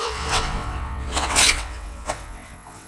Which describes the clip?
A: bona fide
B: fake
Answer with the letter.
B